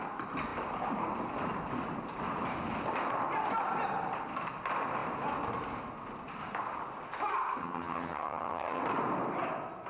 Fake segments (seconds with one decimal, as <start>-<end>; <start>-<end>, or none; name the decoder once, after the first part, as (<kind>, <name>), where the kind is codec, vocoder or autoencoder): 7.6-8.8 (vocoder, HiFi-GAN)